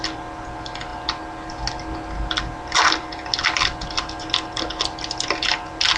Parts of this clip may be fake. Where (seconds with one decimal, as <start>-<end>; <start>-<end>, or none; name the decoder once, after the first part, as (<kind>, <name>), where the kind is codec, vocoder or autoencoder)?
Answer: none